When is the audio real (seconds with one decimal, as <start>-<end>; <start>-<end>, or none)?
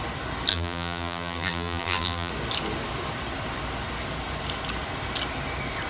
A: 0.0-0.5; 2.3-5.9